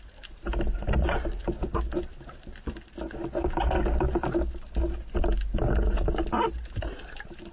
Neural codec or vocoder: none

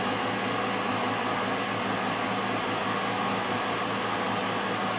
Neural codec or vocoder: none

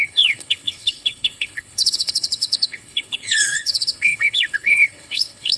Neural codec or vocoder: codec, HILCodec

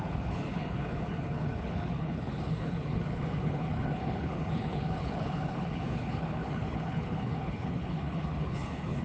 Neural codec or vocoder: codec, HILCodec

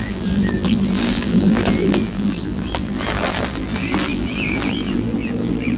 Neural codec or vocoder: vocoder, BigVGAN v2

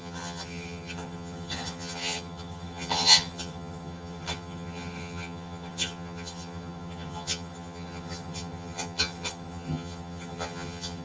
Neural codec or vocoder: vocoder, HiFi-GAN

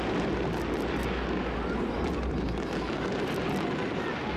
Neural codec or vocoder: none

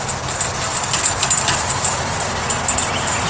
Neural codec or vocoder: none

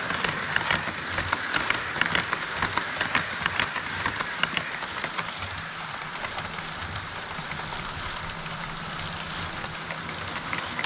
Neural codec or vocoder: vocoder, BigVGAN v2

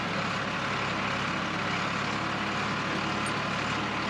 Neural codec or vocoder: none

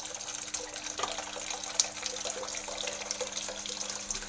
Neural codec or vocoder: none